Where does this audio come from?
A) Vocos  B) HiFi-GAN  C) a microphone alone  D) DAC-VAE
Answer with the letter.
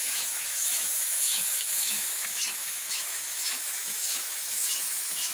D